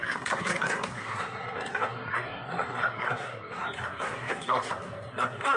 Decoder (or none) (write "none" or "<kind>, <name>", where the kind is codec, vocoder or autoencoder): codec, SNAC